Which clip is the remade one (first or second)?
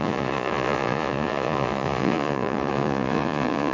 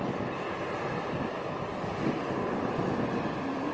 first